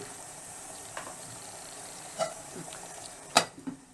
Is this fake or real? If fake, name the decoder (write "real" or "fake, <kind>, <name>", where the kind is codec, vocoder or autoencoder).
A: fake, vocoder, BigVGAN v2